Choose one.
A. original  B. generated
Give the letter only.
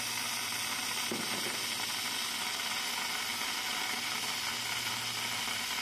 A